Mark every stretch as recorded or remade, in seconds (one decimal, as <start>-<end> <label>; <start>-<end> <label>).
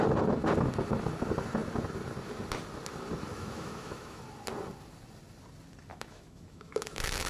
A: 0.0-3.3 recorded; 3.3-4.2 remade; 4.2-5.9 recorded; 5.9-7.3 remade